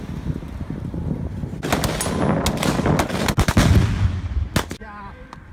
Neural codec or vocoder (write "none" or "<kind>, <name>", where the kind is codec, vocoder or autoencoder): none